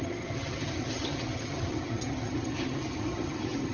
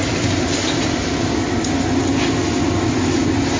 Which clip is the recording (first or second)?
second